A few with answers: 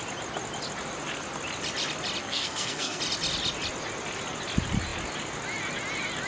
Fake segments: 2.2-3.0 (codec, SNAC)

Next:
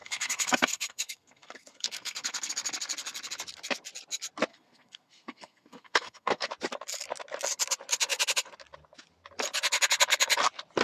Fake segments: 0.0-2.5 (codec, SNAC); 4.5-6.5